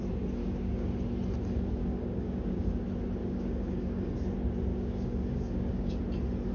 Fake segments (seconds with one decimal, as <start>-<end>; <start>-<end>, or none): 0.4-0.9; 1.8-2.7; 3.2-4.1; 4.7-5.9